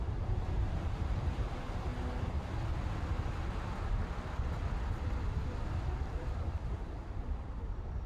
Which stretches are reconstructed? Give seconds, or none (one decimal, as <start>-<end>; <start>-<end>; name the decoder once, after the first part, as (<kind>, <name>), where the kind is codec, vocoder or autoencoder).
0.0-1.9 (vocoder, BigVGAN v2); 5.5-8.1